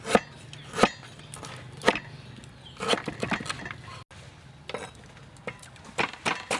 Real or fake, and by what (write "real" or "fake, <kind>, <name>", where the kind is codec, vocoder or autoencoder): real